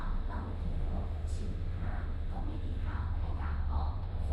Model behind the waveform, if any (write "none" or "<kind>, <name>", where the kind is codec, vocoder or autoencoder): autoencoder, DAC-VAE